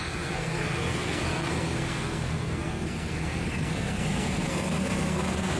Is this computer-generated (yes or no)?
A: yes